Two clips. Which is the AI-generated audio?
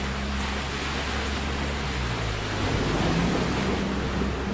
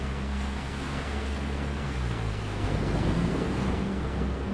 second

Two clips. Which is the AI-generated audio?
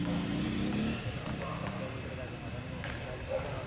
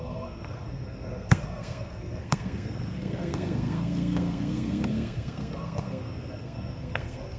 second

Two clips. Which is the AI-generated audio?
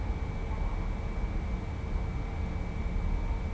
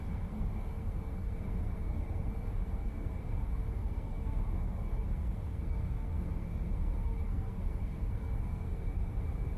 second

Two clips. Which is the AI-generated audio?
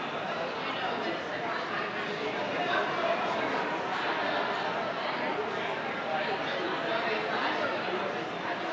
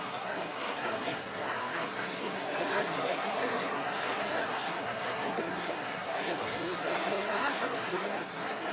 second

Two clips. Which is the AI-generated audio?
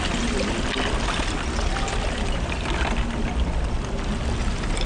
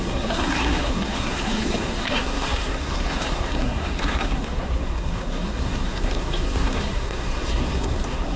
second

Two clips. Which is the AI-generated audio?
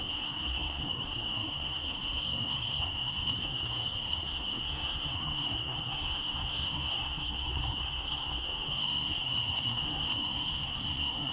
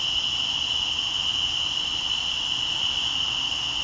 first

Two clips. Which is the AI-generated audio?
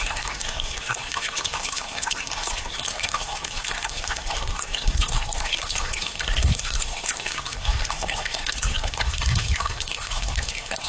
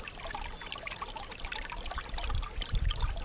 first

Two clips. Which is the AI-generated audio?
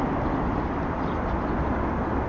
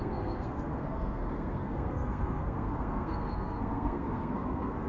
second